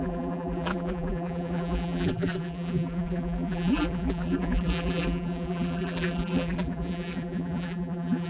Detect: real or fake fake